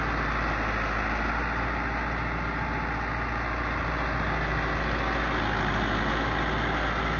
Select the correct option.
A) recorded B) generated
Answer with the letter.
A